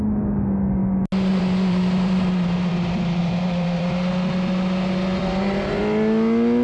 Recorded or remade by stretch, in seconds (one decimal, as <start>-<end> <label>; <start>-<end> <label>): 0.0-1.3 recorded; 1.3-2.7 remade; 2.7-3.2 recorded; 3.2-3.8 remade; 3.8-5.2 recorded; 5.2-5.8 remade; 5.8-6.6 recorded